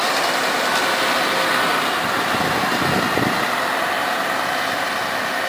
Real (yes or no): yes